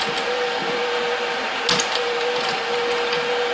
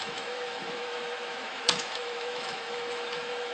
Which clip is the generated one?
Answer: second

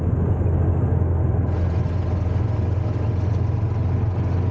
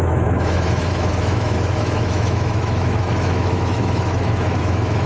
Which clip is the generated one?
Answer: second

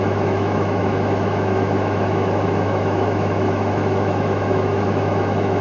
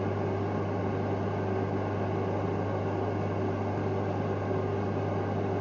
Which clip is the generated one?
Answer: first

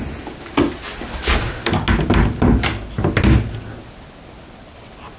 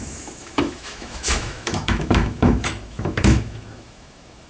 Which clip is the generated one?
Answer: second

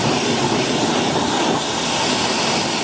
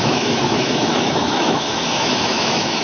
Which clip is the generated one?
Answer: second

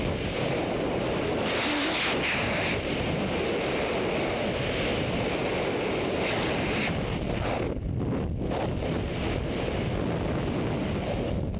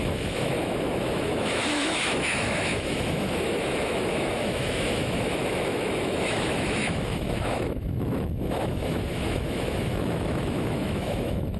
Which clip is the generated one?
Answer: second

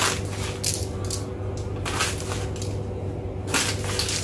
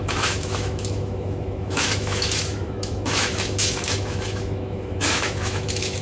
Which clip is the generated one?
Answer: second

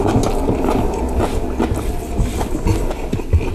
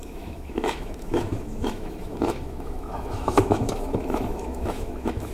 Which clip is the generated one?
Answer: second